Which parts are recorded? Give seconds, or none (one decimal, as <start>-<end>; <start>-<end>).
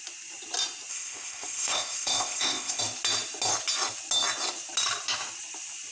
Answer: 0.0-0.9; 2.8-5.9